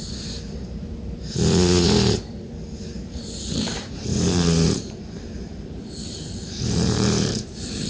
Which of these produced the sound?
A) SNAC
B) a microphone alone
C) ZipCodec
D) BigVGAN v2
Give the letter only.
D